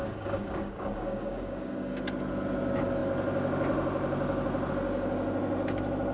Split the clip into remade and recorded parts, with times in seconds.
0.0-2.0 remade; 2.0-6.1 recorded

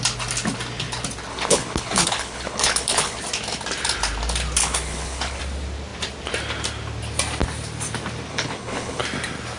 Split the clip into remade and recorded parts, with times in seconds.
0.0-1.3 recorded; 1.3-3.2 remade; 3.2-4.6 recorded; 4.6-5.4 remade; 5.4-8.3 recorded; 8.3-9.0 remade; 9.0-9.6 recorded

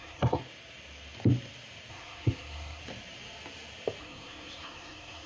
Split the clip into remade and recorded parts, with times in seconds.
0.0-0.4 remade; 0.4-1.9 recorded; 1.9-2.8 remade; 2.8-4.0 recorded; 4.0-5.3 remade